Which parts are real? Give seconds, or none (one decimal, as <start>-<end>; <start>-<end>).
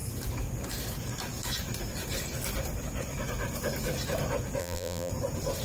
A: 0.0-4.6; 5.1-5.6